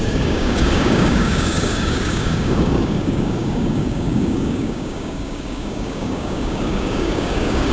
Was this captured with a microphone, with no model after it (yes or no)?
no